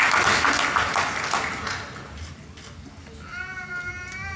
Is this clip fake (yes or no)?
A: no